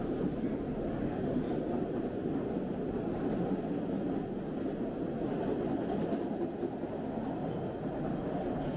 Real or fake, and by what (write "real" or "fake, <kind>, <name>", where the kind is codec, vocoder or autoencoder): real